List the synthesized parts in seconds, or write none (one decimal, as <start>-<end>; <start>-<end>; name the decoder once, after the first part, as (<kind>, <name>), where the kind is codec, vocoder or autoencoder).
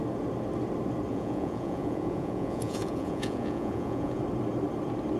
1.1-4.2 (vocoder, Vocos)